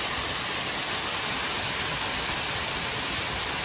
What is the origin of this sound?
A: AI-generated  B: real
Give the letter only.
B